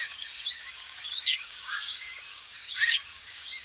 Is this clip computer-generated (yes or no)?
yes